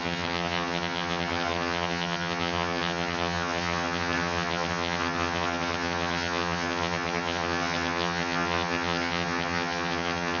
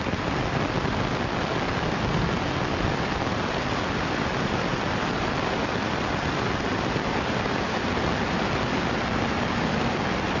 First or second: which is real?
second